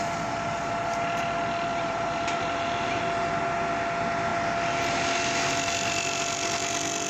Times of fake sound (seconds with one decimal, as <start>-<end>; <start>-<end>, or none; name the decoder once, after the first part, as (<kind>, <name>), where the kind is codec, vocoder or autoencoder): 1.7-3.0 (vocoder, BigVGAN v2)